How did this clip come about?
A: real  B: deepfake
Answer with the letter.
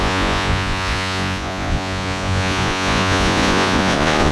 B